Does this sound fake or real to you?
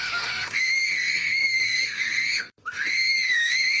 fake